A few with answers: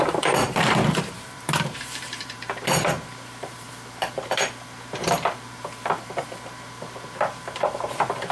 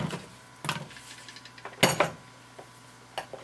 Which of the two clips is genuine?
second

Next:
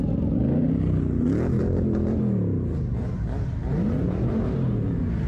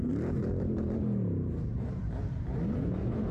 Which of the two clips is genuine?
first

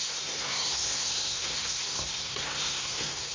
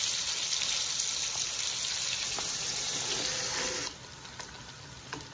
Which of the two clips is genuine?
second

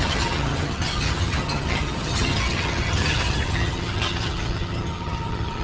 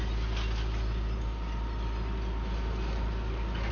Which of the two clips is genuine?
second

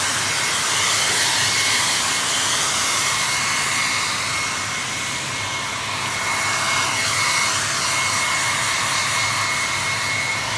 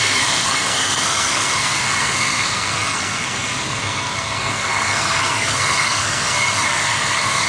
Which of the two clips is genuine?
first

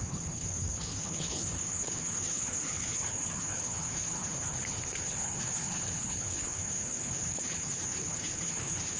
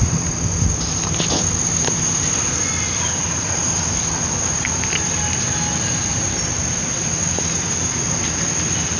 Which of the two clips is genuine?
second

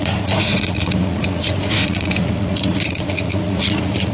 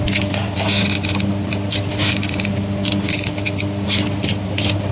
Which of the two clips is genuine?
second